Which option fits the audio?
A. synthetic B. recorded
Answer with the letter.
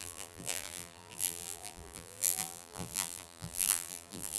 A